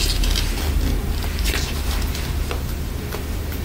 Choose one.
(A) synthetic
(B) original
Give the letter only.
B